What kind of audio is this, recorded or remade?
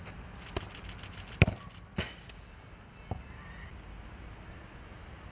recorded